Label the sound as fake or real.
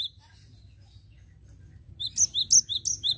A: real